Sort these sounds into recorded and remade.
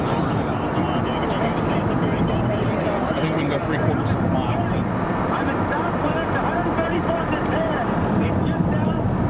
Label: remade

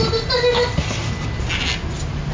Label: recorded